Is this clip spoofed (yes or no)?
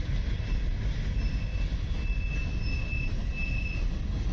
no